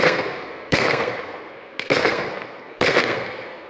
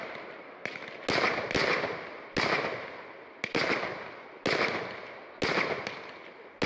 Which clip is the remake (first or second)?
first